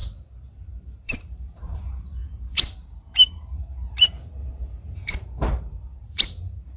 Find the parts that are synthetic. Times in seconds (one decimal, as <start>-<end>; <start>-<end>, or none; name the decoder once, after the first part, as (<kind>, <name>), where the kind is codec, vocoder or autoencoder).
0.0-6.8 (vocoder, BigVGAN v2)